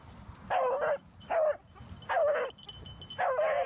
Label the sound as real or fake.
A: real